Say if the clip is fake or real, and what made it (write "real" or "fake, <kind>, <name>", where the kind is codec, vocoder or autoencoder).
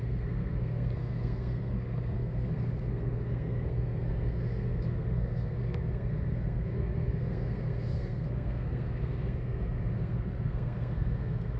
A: fake, codec, SNAC